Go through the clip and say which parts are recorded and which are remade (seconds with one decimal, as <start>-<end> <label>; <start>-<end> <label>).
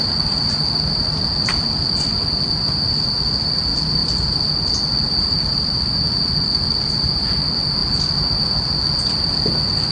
0.0-9.9 recorded